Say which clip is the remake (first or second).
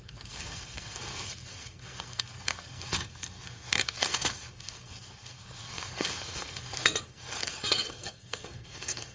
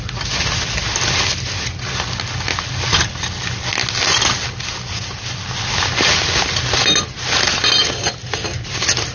first